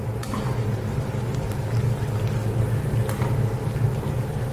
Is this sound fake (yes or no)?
no